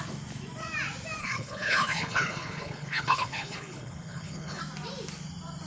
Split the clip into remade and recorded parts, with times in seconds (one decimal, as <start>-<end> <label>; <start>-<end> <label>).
0.0-1.2 recorded; 1.2-4.6 remade; 4.6-5.7 recorded